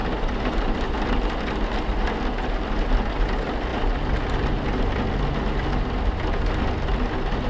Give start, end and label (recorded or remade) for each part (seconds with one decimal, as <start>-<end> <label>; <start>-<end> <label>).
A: 0.0-1.9 remade; 1.9-7.5 recorded